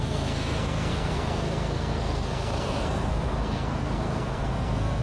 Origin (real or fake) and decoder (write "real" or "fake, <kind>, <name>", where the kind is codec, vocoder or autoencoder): fake, codec, SNAC